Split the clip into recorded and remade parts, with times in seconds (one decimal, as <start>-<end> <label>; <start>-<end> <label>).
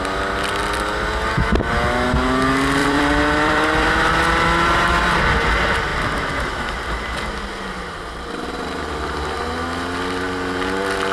0.0-2.8 recorded; 2.8-4.1 remade; 4.1-5.9 recorded; 5.9-6.6 remade; 6.6-11.1 recorded